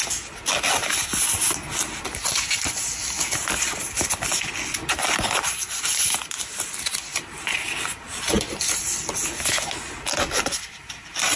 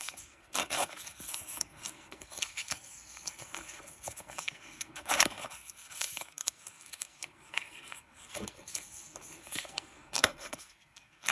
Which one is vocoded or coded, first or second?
second